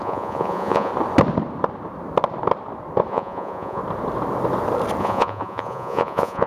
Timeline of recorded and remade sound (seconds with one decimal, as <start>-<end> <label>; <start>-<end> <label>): 0.0-0.9 remade; 0.9-3.1 recorded; 3.1-3.8 remade; 3.8-5.0 recorded; 5.0-6.5 remade